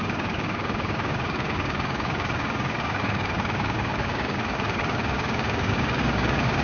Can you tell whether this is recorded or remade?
remade